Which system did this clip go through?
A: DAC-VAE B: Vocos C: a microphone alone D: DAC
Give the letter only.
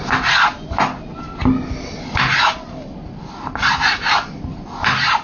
C